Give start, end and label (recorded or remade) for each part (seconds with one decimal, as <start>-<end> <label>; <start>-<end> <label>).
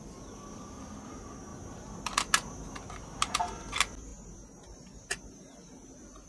0.0-6.3 recorded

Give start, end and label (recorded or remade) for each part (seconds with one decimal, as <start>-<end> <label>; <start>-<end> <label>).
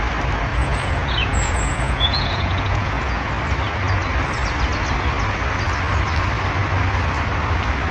0.0-0.5 recorded; 0.5-3.3 remade; 3.3-7.9 recorded